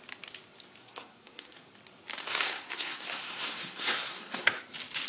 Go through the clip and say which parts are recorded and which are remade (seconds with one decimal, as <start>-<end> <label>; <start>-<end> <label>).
0.0-0.8 recorded; 0.8-1.7 remade; 1.7-2.2 recorded; 2.2-4.6 remade; 4.6-5.1 recorded